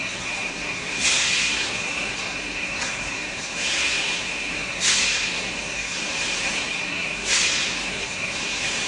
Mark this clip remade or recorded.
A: remade